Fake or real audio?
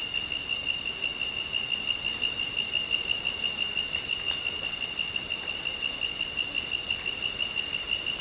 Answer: fake